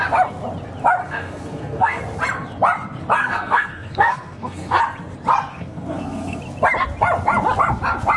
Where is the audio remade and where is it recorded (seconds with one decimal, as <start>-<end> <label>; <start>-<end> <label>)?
0.0-1.0 recorded; 1.0-2.0 remade; 2.0-3.2 recorded; 3.2-4.8 remade; 4.8-5.5 recorded; 5.5-6.4 remade; 6.4-8.2 recorded